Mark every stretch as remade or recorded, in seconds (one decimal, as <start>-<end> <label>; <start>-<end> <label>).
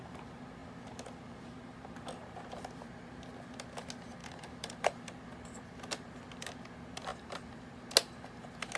0.0-4.2 recorded; 4.2-4.7 remade; 4.7-7.1 recorded; 7.1-7.8 remade; 7.8-8.8 recorded